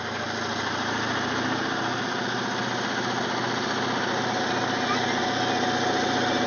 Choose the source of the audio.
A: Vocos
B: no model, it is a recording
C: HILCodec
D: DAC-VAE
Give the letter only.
B